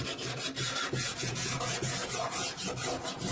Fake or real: fake